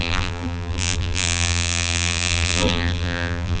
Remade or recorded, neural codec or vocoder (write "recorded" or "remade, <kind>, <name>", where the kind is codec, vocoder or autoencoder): remade, vocoder, BigVGAN v2